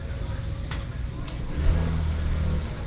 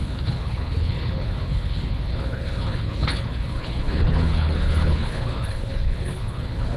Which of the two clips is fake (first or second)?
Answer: second